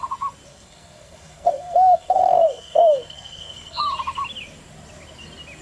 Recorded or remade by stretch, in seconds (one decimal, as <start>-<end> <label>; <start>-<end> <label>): 0.0-0.5 recorded; 0.5-3.8 remade; 3.8-5.6 recorded